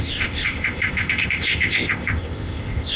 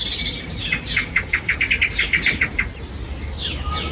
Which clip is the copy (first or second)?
first